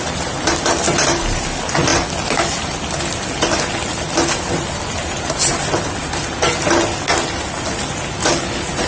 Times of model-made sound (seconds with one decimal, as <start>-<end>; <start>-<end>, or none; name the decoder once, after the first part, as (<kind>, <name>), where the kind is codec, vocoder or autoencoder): none